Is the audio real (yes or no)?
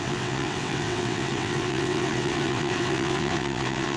no